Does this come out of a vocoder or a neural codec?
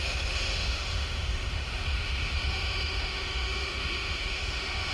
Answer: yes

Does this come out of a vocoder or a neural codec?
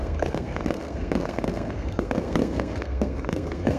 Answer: yes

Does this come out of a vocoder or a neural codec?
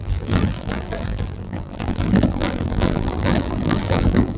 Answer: yes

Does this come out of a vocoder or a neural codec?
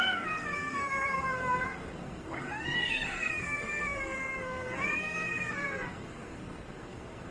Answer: yes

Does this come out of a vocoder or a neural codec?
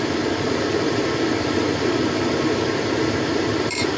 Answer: yes